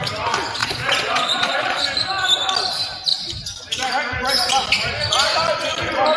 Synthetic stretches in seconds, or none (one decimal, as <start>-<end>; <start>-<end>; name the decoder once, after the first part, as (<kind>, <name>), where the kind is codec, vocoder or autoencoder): 0.6-1.8 (vocoder, Vocos)